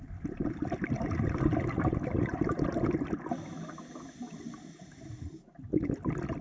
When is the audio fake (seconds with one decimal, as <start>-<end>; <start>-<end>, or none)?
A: none